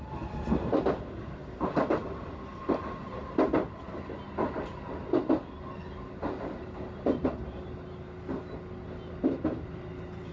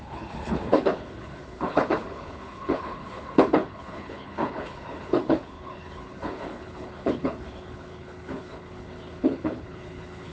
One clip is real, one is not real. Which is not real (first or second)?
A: second